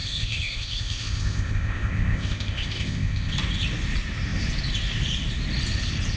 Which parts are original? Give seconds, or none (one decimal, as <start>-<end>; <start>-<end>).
3.3-6.2